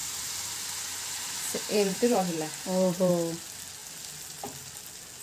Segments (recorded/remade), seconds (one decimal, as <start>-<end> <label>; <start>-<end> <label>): 0.0-3.1 remade; 3.1-5.2 recorded